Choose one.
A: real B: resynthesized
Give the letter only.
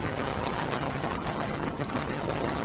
B